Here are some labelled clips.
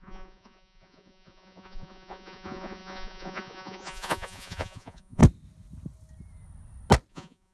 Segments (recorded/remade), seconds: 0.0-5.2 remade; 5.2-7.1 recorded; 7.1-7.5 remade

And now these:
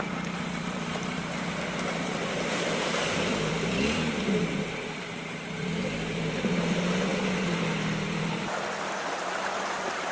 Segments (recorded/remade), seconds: 0.0-10.1 remade

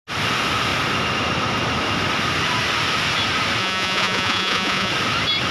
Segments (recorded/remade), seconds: 0.0-3.6 recorded; 3.6-4.9 remade; 4.9-5.5 recorded

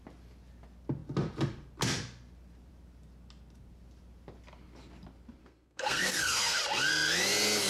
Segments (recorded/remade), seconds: 0.0-5.4 recorded; 5.4-6.6 remade; 6.6-7.7 recorded

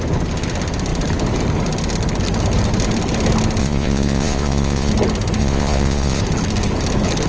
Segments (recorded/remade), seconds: 0.0-3.6 recorded; 3.6-4.9 remade; 4.9-5.4 recorded; 5.4-6.2 remade; 6.2-7.3 recorded

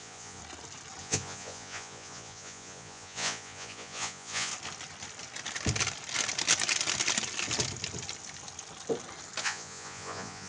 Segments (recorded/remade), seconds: 0.0-0.4 remade; 0.4-1.0 recorded; 1.0-4.5 remade; 4.5-9.4 recorded; 9.4-10.5 remade

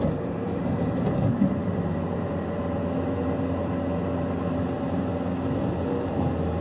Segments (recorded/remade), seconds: 0.0-1.6 remade; 1.6-2.1 recorded; 2.1-5.1 remade; 5.1-6.1 recorded; 6.1-6.6 remade

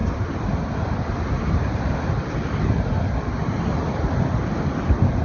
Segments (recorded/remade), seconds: 0.0-5.2 recorded